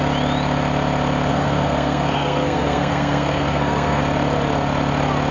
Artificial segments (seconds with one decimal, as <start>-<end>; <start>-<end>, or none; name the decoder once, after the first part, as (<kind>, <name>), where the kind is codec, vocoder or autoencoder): 1.3-4.0 (codec, SNAC)